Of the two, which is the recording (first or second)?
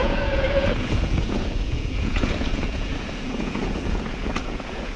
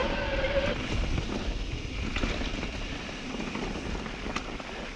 second